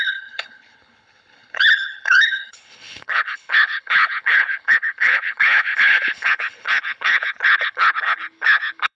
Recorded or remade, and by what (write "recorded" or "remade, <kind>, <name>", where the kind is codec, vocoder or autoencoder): remade, codec, HILCodec